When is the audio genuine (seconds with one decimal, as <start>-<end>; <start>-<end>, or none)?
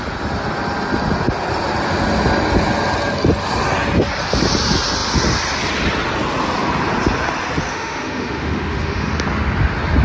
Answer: 0.0-7.7; 9.1-10.0